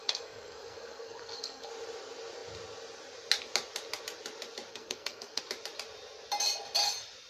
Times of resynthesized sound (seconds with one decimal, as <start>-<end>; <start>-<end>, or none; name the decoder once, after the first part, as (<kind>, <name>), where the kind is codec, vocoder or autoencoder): 0.0-1.7 (codec, SNAC); 4.7-5.4